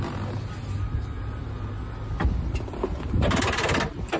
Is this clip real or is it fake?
real